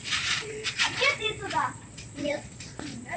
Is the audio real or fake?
fake